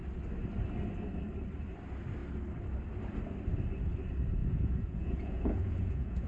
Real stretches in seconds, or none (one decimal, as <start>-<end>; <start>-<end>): 0.0-4.4